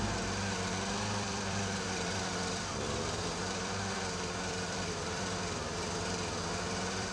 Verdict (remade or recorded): remade